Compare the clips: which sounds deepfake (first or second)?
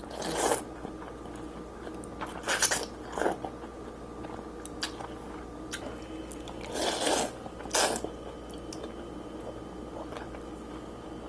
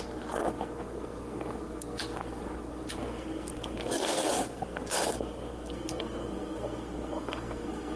second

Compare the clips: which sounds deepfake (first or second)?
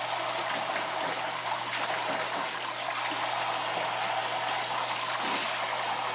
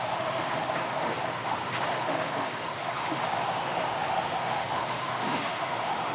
second